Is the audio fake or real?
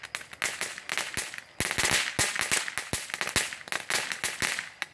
real